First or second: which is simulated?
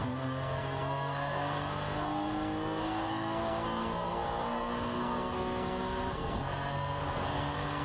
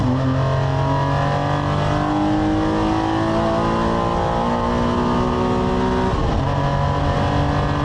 first